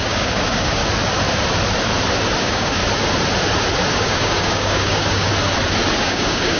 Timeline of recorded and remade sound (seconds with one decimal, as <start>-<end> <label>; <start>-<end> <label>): 0.0-0.8 remade; 0.8-2.4 recorded; 2.4-2.8 remade; 2.8-3.9 recorded; 3.9-5.3 remade; 5.3-6.0 recorded; 6.0-6.6 remade